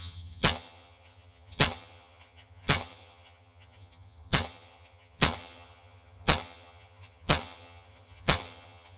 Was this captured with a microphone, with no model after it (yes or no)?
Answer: no